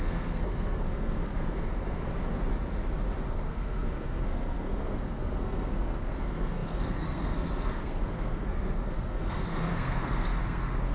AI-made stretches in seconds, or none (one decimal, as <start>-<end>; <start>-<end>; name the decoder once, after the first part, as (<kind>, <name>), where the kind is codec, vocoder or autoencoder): 0.0-2.1 (codec, SNAC); 3.3-10.9